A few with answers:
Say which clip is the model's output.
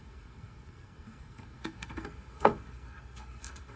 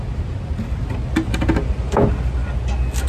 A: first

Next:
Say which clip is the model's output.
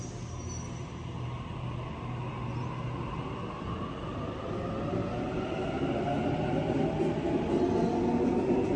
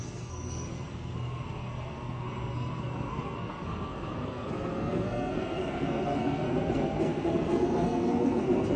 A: second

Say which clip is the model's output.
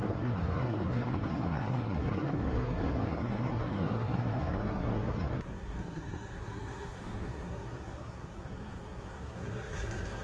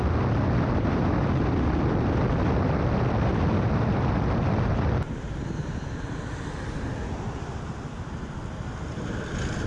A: first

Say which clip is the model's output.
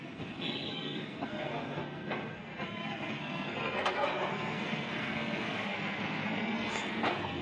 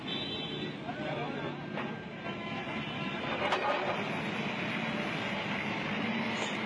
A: first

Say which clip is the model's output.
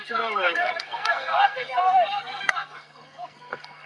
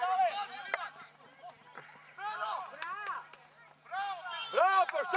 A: first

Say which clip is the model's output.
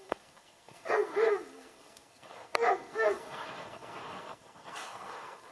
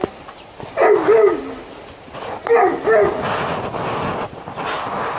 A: first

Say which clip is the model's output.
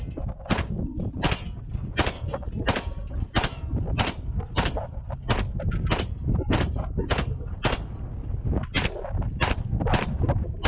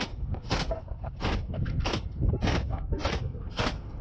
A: second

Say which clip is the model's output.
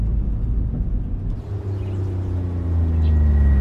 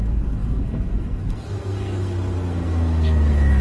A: second